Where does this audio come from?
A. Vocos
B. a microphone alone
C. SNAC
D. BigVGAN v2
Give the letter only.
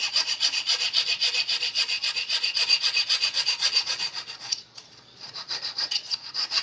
A